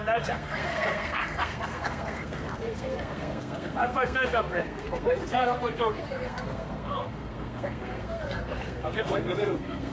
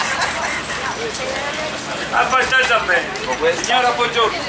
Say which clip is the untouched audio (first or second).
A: second